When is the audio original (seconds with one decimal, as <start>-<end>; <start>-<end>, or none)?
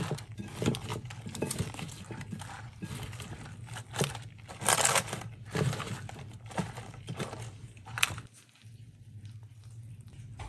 0.0-10.5